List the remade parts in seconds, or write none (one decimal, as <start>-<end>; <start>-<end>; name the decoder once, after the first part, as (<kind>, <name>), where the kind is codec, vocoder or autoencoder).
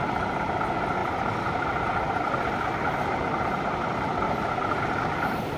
none